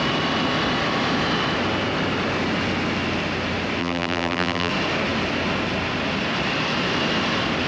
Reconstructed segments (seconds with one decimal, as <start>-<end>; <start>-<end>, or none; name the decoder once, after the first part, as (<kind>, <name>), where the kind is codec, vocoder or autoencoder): 3.8-4.7 (vocoder, BigVGAN v2)